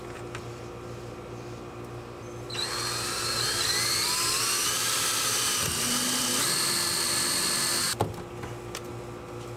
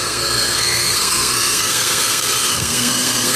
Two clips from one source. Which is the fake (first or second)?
second